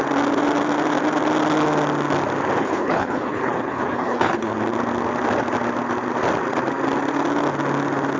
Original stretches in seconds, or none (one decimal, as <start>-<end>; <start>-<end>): 0.0-2.6; 4.5-8.2